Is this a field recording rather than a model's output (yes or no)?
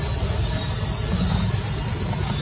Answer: yes